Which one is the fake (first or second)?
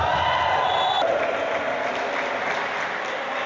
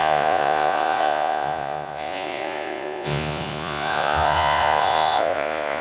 second